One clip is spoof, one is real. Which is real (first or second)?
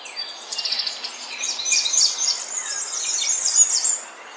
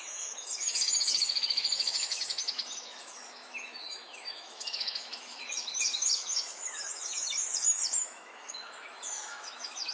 first